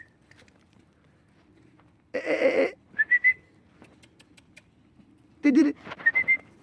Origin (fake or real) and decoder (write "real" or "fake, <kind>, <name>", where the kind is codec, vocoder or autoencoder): fake, vocoder, BigVGAN v2